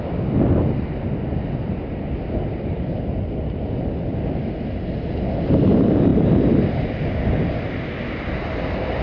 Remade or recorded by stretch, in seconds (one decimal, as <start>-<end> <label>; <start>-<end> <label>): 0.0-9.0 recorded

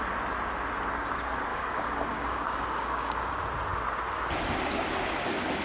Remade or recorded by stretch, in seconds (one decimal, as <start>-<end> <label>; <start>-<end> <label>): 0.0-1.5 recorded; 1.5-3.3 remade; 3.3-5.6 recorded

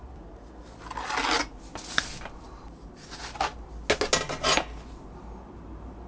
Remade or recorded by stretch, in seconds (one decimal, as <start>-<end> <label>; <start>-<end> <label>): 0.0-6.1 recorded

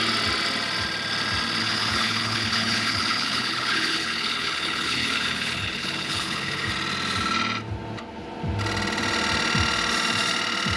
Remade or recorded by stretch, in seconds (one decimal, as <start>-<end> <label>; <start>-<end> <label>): 0.0-1.6 recorded; 1.6-6.7 remade; 6.7-10.8 recorded